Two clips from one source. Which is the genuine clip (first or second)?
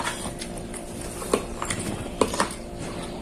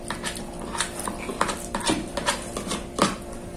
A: second